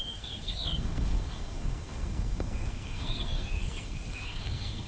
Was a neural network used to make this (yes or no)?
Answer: yes